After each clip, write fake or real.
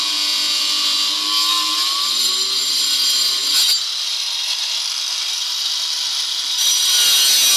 real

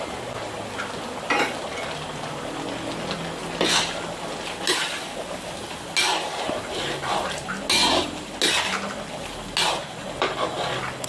real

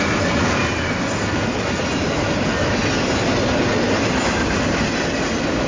real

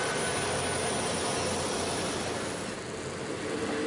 real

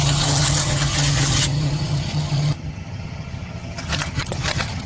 fake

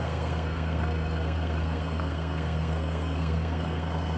fake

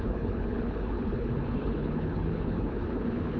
fake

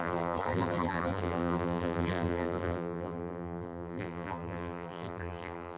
fake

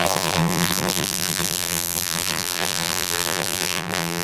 fake